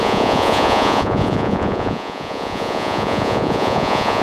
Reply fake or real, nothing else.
fake